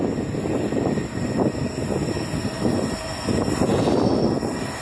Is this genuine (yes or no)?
yes